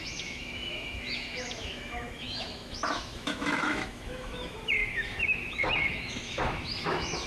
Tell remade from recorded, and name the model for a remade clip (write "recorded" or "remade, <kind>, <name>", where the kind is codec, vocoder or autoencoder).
remade, autoencoder, DAC-VAE